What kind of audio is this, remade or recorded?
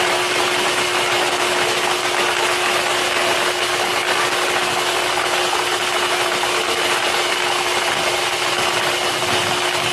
recorded